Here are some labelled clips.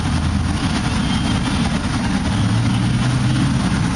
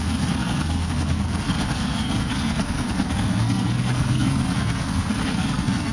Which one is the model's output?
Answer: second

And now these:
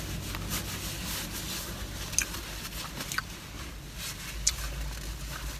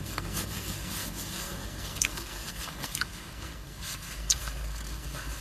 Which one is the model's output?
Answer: second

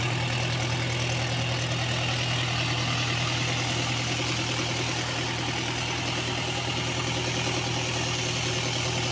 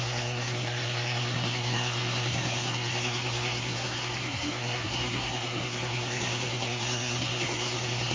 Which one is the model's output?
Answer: second